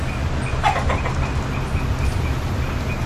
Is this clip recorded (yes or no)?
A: yes